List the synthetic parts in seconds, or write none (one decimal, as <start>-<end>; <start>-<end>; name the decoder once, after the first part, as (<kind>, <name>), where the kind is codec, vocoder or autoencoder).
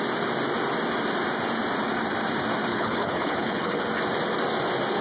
2.7-3.8 (codec, HILCodec)